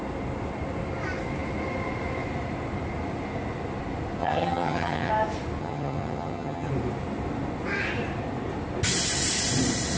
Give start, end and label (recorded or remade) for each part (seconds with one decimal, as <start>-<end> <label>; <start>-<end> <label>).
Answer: 0.0-4.2 recorded; 4.2-5.1 remade; 5.1-5.6 recorded; 5.6-6.7 remade; 6.7-10.0 recorded